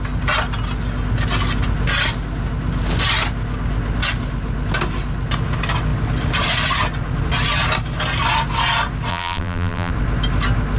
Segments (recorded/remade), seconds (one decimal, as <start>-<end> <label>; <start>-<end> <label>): 0.0-9.1 recorded; 9.1-9.9 remade; 9.9-10.8 recorded